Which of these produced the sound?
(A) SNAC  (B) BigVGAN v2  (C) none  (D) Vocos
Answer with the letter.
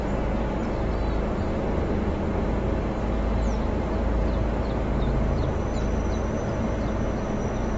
C